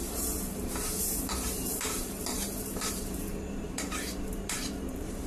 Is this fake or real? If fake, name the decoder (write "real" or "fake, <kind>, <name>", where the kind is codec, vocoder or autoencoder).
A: fake, vocoder, BigVGAN v2